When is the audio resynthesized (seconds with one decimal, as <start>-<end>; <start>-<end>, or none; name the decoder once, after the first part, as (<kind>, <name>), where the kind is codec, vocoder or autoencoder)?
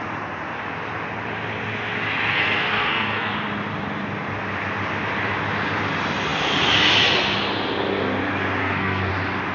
2.3-3.3 (codec, SNAC); 8.6-9.1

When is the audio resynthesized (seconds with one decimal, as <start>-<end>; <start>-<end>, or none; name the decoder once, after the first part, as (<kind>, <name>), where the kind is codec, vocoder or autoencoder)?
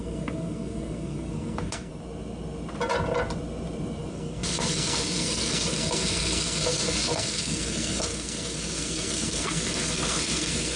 0.0-1.9 (codec, SNAC); 4.1-10.8